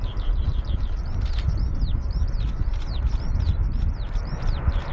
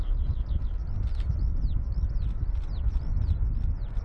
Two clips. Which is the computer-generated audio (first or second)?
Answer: first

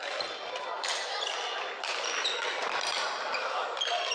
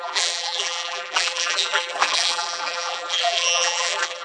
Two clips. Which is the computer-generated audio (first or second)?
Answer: second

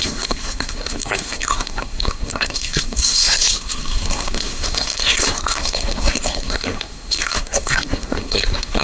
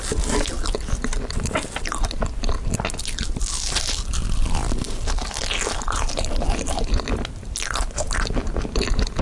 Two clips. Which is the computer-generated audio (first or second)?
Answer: first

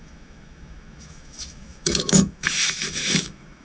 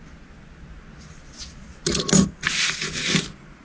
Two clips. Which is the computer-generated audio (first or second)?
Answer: first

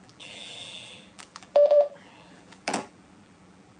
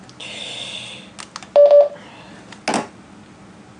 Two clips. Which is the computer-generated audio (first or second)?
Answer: first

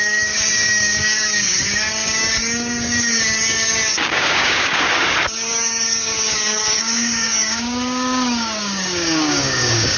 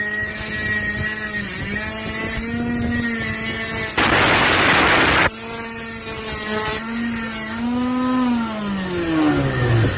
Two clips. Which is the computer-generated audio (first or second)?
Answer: first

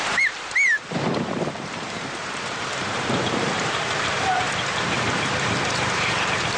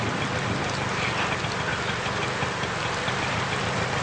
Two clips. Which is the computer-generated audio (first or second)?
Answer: first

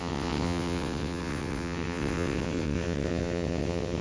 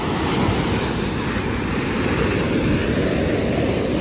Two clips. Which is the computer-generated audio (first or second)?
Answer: first